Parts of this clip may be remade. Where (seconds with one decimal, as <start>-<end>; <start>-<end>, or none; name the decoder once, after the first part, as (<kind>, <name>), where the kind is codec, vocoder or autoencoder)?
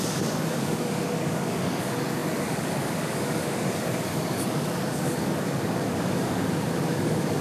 0.0-7.4 (codec, DAC)